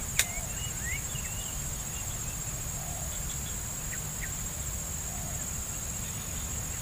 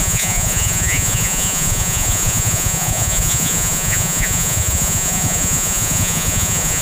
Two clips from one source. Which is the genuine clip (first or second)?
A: first